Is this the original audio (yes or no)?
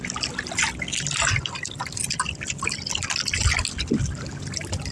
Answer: yes